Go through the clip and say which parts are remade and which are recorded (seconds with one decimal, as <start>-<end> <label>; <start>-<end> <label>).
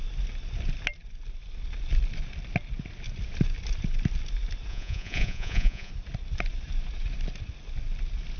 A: 0.0-4.7 recorded; 4.7-5.9 remade; 5.9-8.4 recorded